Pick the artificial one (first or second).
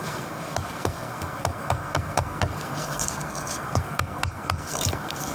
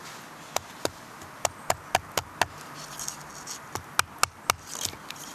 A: first